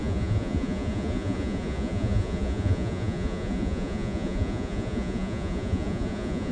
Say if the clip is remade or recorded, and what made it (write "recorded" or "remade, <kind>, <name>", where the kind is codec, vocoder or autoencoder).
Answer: remade, vocoder, Vocos